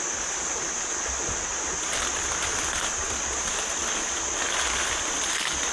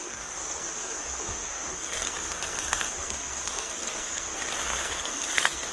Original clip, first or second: first